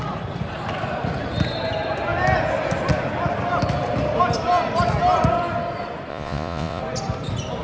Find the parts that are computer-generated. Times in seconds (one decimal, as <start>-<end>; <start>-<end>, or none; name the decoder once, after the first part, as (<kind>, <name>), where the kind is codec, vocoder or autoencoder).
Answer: 6.1-6.8 (vocoder, Vocos)